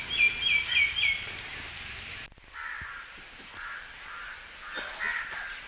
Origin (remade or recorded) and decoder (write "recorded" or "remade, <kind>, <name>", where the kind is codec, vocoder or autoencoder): recorded